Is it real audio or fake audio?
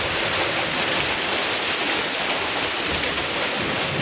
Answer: real